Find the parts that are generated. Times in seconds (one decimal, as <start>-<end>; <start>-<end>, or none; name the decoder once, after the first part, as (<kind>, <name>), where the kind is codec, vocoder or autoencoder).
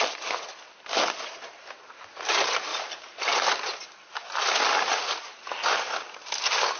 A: 2.7-3.5 (vocoder, BigVGAN v2)